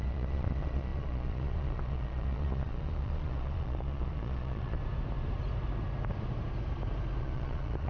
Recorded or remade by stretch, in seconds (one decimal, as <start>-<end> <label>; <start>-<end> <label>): 0.0-4.8 remade; 4.8-7.2 recorded; 7.2-7.9 remade